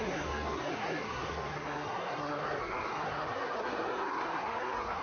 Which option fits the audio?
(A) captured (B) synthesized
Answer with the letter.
B